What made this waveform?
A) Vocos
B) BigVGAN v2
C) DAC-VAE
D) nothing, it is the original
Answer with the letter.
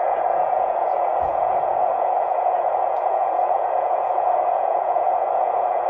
A